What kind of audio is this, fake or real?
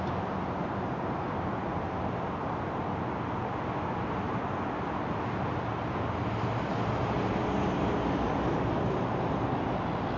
real